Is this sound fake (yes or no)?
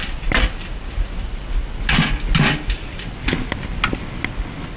no